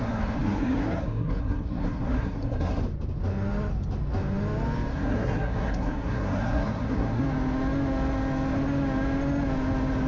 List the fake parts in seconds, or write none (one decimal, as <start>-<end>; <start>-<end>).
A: 0.0-2.8; 4.9-7.2

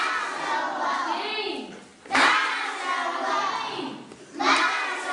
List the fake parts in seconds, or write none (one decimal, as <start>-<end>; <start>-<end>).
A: none

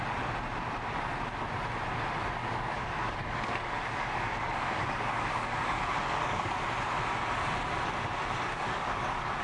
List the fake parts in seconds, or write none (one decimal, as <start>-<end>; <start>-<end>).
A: 2.4-6.6; 8.5-9.4

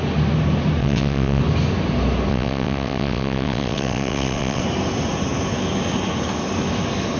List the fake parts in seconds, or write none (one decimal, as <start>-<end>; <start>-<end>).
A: 0.8-1.4; 2.3-4.6